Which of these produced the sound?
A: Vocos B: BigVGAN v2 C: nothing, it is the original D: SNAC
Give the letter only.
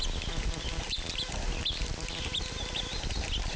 C